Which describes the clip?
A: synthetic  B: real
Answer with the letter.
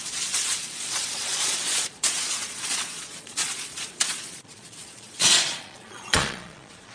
A